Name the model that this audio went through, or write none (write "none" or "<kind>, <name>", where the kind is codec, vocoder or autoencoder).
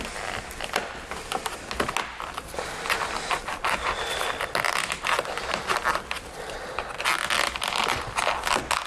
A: none